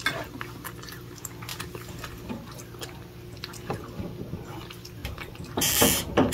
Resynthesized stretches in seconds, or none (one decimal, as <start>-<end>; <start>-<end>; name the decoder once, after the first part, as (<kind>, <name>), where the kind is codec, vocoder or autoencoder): none